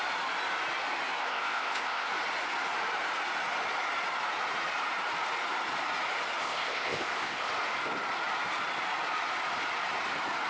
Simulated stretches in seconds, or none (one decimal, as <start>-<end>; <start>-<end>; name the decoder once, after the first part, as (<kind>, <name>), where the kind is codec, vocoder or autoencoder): 1.2-2.1 (codec, ZipCodec); 6.4-7.5